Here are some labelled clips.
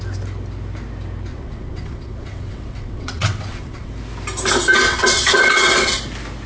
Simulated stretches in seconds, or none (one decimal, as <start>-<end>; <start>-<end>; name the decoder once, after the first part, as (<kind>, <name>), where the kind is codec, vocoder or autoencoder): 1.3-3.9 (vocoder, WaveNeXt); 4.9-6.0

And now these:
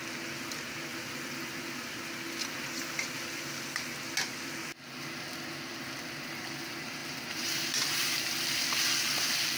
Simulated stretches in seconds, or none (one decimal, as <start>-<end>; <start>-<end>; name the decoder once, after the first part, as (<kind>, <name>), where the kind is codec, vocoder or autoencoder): 7.0-8.2 (vocoder, BigVGAN v2)

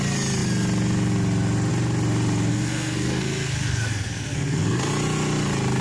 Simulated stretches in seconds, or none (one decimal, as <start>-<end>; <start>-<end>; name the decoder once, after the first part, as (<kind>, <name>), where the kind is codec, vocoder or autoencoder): 2.5-4.9 (codec, SNAC)